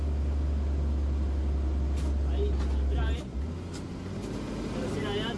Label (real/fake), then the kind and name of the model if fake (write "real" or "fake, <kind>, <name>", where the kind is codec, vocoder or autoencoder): real